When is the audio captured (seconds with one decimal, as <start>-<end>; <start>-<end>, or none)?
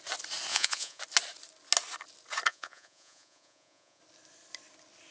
0.0-0.5; 1.0-2.5; 4.0-5.1